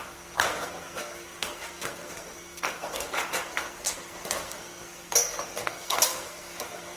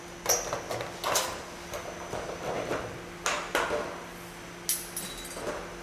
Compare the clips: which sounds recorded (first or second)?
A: second